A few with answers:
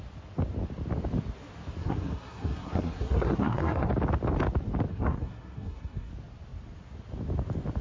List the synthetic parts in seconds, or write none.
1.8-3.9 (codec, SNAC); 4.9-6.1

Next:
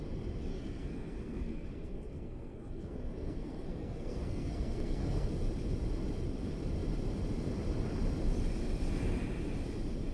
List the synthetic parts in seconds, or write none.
0.5-5.3 (codec, SNAC)

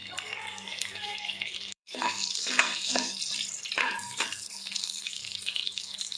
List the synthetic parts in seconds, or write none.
0.0-3.2 (codec, SNAC); 3.8-6.2

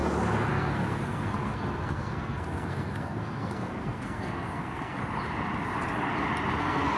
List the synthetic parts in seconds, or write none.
0.5-5.0 (codec, SNAC); 6.6-7.0

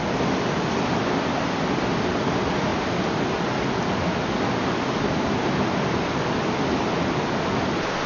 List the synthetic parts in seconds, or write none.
none

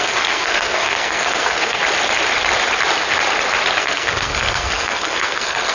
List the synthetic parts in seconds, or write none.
0.0-1.8 (codec, SNAC); 3.8-5.7

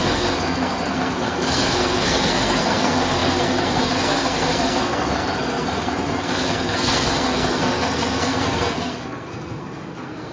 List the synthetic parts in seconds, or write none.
0.0-10.3 (codec, SNAC)

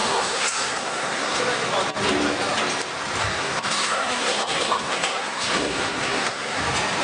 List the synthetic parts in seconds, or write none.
0.0-1.4 (codec, SNAC); 3.2-6.6